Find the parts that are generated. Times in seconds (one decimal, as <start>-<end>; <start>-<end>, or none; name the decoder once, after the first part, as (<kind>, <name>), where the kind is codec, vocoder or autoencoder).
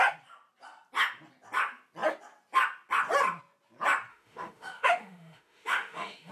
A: 4.1-6.3 (autoencoder, DAC-VAE)